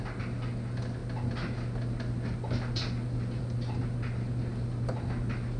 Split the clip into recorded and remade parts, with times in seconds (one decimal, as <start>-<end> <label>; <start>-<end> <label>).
0.0-5.6 recorded